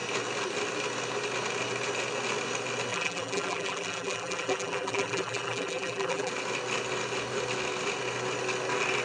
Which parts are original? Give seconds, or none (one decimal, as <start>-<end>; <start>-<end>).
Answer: 0.0-2.9; 6.3-9.0